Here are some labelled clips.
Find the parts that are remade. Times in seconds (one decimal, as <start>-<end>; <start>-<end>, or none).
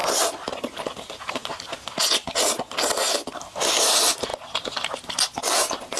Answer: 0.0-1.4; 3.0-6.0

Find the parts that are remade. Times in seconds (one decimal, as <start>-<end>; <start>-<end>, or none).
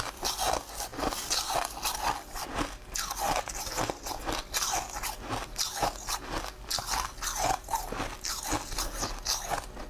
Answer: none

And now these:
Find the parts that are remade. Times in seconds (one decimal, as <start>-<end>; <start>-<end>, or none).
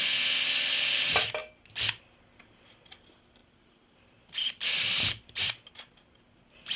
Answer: 3.4-5.7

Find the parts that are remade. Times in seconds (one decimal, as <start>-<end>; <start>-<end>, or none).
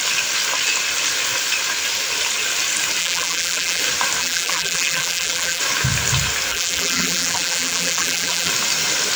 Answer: 3.0-3.8; 4.2-5.6; 6.5-8.5